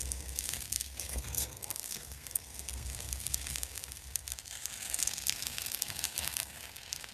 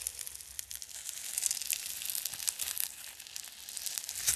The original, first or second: second